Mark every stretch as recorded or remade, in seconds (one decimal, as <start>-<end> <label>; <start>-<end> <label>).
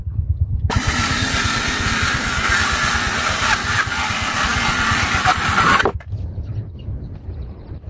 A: 0.0-7.9 recorded